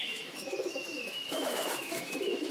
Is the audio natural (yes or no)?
no